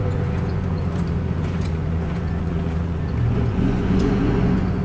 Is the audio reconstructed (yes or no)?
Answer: yes